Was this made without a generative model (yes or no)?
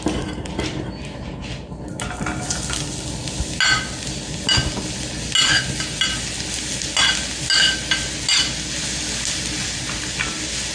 yes